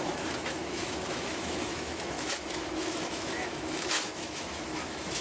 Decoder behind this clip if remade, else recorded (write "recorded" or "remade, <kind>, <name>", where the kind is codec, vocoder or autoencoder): remade, autoencoder, DAC-VAE